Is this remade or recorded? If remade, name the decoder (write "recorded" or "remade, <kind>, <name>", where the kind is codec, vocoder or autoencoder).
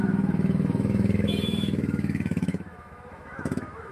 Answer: remade, autoencoder, DAC-VAE